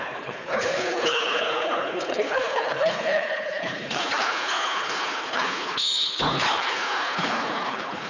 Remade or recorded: remade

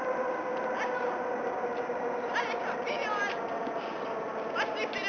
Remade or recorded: recorded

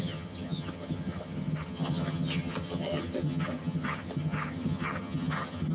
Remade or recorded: remade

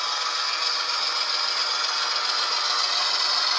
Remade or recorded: recorded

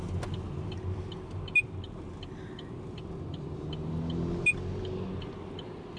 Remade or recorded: recorded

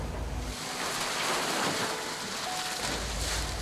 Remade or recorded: recorded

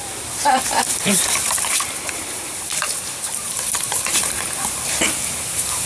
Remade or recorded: remade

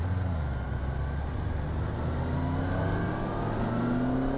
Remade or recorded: recorded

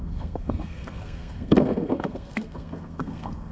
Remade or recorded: remade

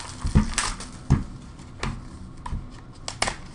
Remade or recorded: recorded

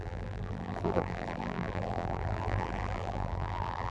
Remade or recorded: remade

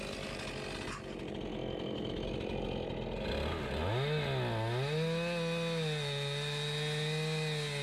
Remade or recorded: recorded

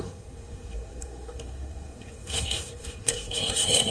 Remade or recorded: remade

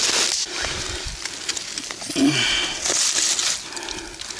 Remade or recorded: recorded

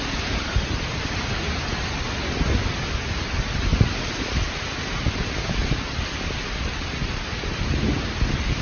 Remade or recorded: recorded